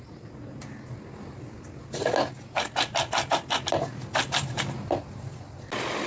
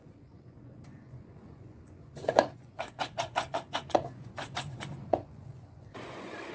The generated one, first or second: second